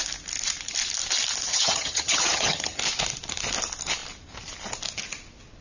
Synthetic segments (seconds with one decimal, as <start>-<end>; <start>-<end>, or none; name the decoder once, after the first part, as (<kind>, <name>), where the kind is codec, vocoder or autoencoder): 1.5-2.8 (vocoder, HiFi-GAN)

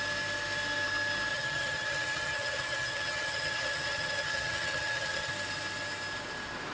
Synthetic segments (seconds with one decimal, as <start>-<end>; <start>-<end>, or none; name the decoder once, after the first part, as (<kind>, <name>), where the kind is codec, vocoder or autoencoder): 1.3-5.3 (vocoder, HiFi-GAN)

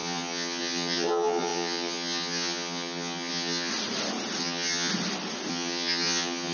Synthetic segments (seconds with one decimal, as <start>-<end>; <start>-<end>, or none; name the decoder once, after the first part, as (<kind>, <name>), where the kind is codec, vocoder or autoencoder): 0.0-3.7 (vocoder, HiFi-GAN); 4.4-4.9; 5.5-6.5